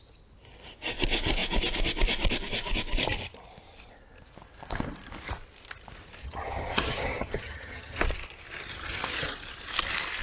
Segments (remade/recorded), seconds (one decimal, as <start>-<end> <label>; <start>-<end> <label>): 0.0-6.2 recorded; 6.2-8.0 remade; 8.0-10.2 recorded